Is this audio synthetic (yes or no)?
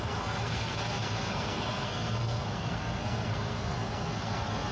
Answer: yes